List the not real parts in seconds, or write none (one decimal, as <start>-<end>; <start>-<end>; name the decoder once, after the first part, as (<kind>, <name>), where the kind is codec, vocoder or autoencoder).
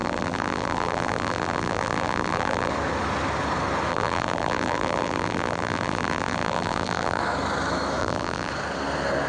0.0-2.7 (vocoder, BigVGAN v2); 3.9-7.2; 8.0-8.5